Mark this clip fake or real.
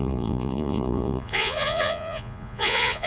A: fake